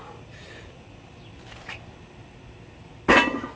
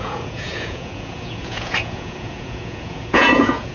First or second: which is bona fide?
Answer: first